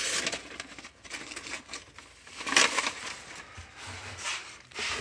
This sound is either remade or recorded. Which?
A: recorded